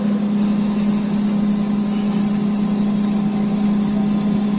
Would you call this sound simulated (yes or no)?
no